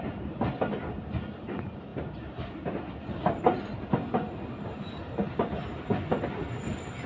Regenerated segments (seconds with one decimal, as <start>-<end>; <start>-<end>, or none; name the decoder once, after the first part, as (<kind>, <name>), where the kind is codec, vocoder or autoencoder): none